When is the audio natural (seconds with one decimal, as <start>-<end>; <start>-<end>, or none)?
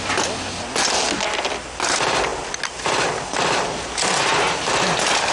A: 0.0-5.3